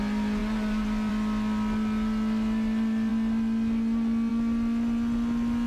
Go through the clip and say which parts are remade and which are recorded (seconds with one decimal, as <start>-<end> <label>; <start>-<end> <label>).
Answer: 0.0-5.7 recorded